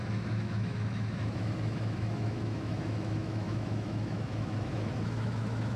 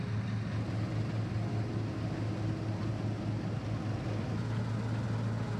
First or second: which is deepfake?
first